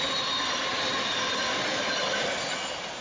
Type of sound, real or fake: real